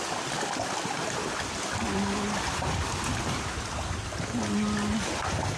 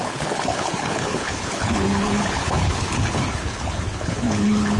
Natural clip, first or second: first